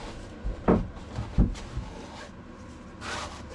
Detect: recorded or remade recorded